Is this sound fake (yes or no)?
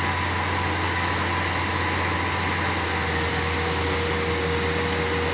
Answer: no